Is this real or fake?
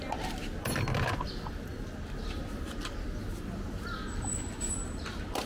real